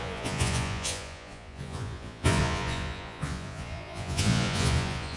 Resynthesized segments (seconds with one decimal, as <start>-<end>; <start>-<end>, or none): 0.0-5.2